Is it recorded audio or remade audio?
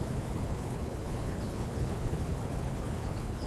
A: remade